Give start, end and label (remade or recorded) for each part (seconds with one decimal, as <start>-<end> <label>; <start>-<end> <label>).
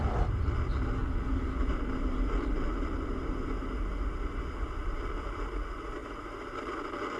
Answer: 0.0-7.2 recorded